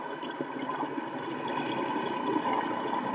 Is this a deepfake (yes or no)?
no